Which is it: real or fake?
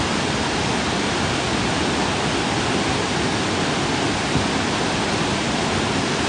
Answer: real